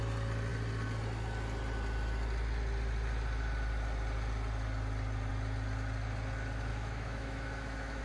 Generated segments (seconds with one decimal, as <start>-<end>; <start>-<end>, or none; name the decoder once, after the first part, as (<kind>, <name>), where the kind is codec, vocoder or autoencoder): 6.7-8.0 (autoencoder, DAC-VAE)